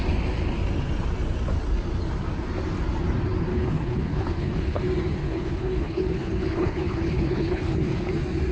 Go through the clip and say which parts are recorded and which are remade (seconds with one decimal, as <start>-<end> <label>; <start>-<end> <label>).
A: 0.0-3.5 recorded; 3.5-4.8 remade; 4.8-5.2 recorded; 5.2-8.1 remade; 8.1-8.5 recorded